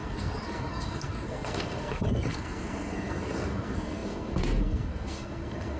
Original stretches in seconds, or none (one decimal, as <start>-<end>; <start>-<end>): none